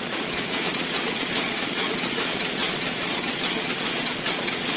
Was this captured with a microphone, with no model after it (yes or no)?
no